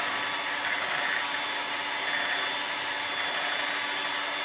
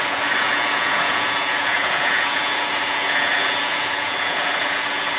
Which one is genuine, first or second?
first